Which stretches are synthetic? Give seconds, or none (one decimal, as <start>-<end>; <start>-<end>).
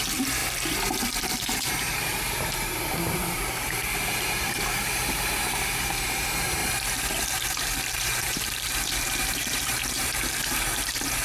0.0-0.4; 1.1-6.6; 7.2-11.2